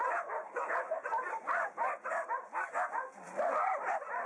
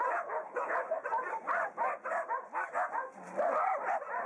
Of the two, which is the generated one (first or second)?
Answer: first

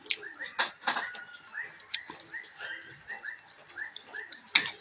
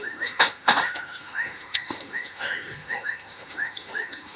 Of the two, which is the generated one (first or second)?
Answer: second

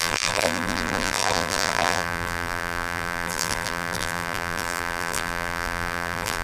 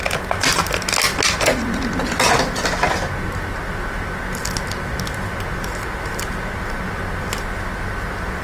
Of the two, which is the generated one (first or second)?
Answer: first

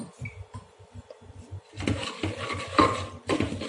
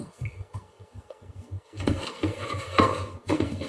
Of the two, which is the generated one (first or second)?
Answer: second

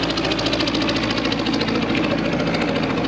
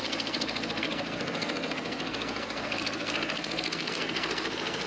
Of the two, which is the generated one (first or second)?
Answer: second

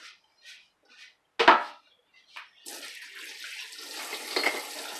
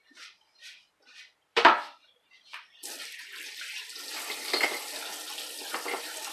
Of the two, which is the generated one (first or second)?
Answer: second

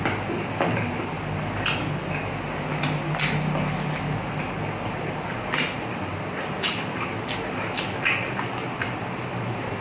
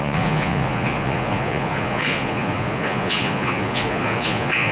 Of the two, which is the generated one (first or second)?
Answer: second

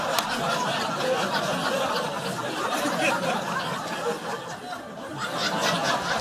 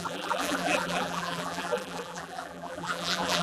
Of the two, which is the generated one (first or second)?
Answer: second